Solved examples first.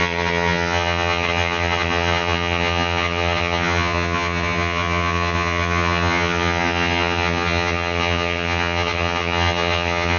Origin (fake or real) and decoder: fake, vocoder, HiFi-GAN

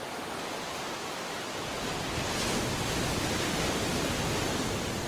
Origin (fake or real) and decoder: real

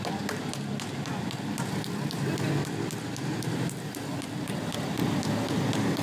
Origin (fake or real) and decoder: real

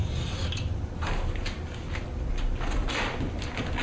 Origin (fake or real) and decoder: real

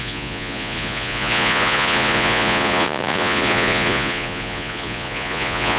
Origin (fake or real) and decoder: fake, vocoder, Vocos